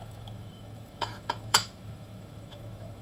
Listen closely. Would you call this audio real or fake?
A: fake